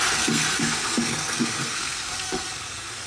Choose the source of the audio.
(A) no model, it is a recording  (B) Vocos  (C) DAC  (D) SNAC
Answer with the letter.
D